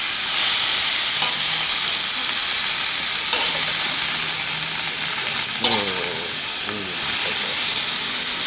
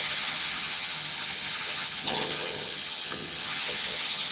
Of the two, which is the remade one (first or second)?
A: second